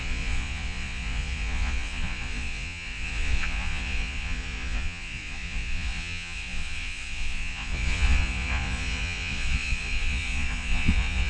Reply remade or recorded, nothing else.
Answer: remade